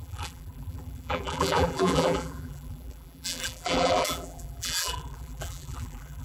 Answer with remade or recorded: remade